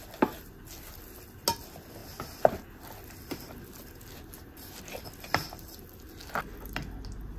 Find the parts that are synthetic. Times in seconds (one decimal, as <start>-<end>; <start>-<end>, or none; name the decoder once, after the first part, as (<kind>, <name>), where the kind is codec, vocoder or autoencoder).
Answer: none